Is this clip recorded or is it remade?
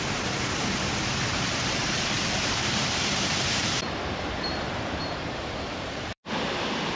remade